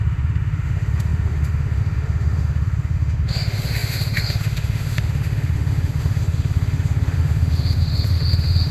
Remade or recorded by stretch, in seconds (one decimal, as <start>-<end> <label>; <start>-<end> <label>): 0.0-8.7 remade